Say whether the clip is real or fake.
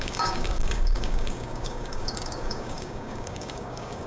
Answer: fake